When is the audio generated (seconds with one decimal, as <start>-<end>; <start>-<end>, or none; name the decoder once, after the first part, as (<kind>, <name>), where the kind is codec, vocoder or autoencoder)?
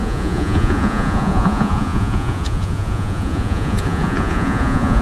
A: 0.0-5.0 (vocoder, Vocos)